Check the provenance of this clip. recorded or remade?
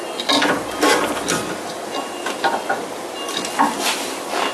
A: recorded